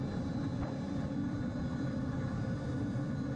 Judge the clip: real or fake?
fake